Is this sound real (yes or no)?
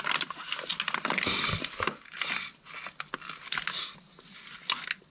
yes